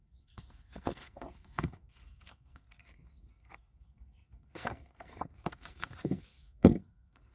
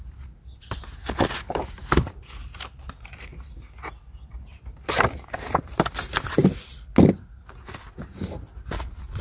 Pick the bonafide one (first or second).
second